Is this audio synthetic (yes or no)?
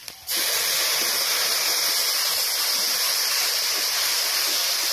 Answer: no